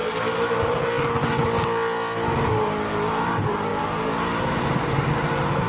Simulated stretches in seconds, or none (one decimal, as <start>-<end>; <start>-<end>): 2.5-5.7